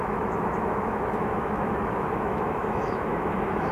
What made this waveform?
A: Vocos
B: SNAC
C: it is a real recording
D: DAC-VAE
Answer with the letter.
D